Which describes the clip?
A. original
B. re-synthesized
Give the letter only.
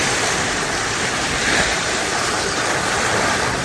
B